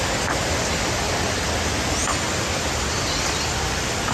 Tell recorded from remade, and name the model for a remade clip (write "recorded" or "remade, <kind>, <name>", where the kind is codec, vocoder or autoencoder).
recorded